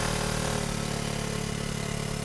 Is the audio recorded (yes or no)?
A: yes